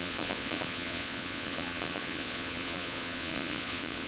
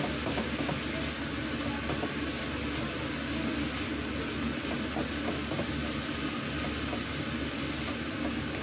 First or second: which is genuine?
second